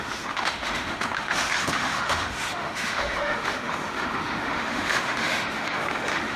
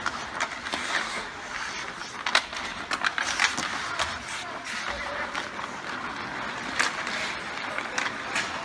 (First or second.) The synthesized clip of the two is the first